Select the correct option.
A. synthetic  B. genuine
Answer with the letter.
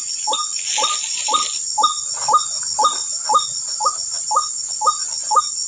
B